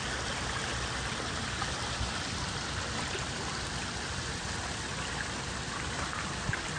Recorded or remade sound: recorded